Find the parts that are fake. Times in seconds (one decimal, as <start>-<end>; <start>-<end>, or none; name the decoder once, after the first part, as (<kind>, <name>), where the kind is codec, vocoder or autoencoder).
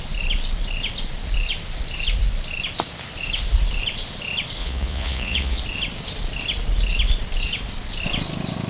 4.6-5.6 (vocoder, Vocos)